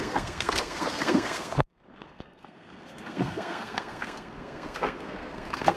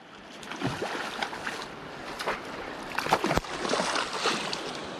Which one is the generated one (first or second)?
first